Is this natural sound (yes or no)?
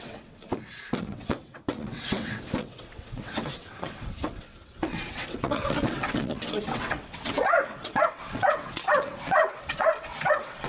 no